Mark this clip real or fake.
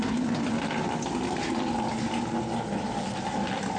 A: real